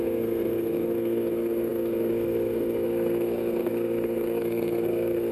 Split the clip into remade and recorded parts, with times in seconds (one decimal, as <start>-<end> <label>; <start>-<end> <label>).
0.0-5.3 remade